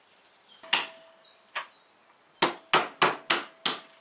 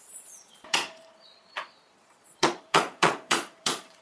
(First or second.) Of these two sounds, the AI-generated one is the second